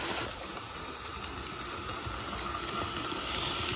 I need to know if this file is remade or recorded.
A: recorded